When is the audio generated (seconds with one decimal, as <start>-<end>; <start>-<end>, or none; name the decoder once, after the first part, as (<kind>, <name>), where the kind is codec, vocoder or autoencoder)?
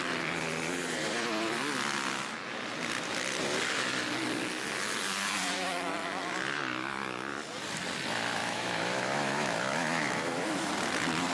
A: 8.4-10.7 (autoencoder, DAC-VAE)